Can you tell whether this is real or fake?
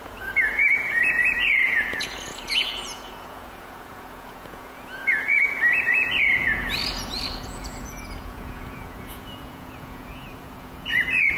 fake